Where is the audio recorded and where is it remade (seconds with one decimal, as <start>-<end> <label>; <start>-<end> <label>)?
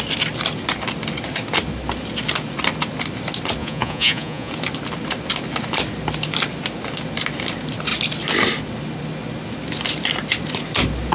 0.0-3.6 recorded; 3.6-4.5 remade; 4.5-11.1 recorded